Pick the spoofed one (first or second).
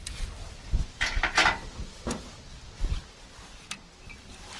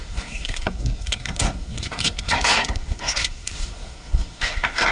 second